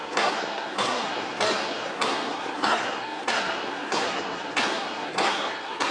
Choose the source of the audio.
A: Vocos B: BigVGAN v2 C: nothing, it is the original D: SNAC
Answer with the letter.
D